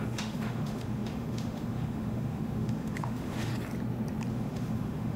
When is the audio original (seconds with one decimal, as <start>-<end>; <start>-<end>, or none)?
3.5-4.3